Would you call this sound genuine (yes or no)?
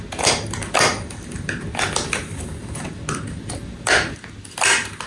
yes